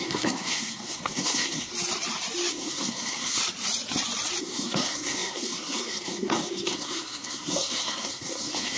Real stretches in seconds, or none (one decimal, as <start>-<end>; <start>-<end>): 1.7-2.5; 3.4-4.4